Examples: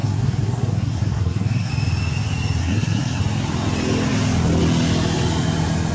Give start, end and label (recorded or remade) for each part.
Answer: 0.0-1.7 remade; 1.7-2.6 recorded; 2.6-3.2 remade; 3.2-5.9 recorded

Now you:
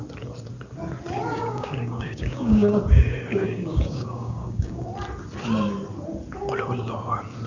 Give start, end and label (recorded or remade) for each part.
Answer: 0.0-1.3 recorded; 1.3-2.7 remade; 2.7-3.3 recorded; 3.3-4.9 remade; 4.9-7.5 recorded